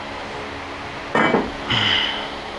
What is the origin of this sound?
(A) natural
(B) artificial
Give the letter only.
A